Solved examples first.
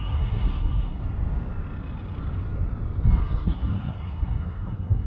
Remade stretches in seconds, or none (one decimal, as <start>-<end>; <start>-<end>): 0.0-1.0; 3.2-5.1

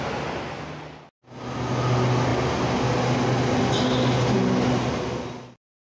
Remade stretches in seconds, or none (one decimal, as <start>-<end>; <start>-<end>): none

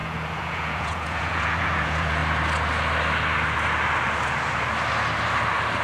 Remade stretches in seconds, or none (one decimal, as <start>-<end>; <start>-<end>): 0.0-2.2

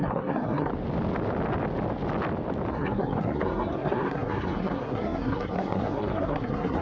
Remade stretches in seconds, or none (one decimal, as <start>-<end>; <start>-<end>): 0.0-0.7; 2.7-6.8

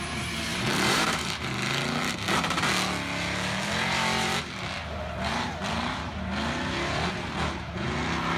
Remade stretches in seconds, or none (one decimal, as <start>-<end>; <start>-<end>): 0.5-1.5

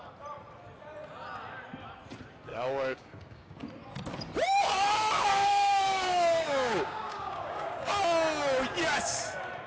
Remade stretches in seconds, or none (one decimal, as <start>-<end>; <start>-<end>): 2.5-3.6; 5.3-7.8

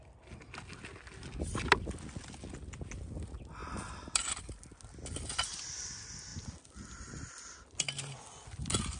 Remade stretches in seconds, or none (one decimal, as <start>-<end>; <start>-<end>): none